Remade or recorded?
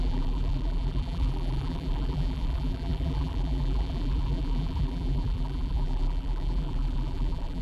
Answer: remade